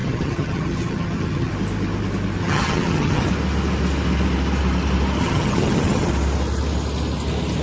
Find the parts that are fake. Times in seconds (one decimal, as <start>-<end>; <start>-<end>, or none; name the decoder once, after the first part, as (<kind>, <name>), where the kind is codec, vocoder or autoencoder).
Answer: 0.0-1.5 (vocoder, HiFi-GAN); 2.4-3.3; 5.2-6.1